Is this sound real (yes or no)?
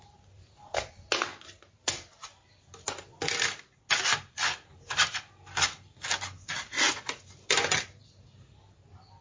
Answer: yes